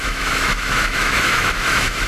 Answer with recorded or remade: remade